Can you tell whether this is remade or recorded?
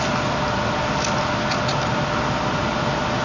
recorded